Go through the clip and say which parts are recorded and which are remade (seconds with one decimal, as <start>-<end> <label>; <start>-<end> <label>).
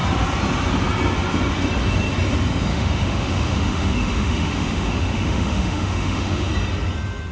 0.0-2.7 recorded; 2.7-6.5 remade; 6.5-7.3 recorded